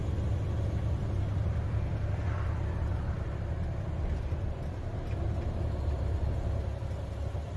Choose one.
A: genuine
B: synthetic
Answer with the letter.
A